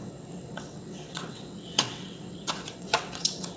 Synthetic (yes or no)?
yes